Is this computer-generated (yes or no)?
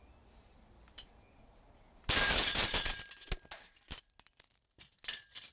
no